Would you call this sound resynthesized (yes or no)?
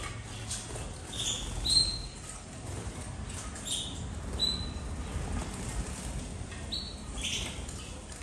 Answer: no